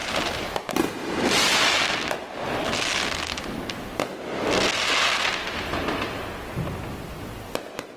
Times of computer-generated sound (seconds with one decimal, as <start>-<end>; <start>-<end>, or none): none